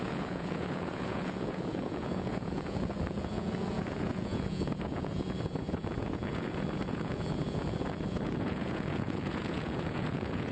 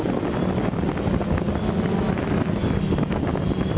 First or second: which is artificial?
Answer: first